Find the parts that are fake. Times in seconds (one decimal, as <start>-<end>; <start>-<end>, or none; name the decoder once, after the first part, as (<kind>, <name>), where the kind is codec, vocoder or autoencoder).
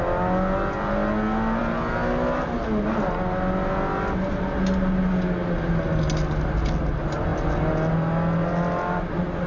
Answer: none